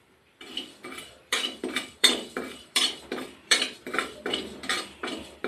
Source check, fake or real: fake